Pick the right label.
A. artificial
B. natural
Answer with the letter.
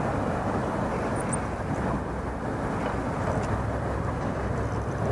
B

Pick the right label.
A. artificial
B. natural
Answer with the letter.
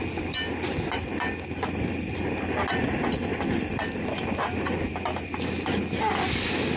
B